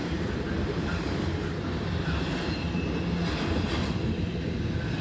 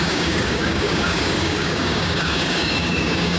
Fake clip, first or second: second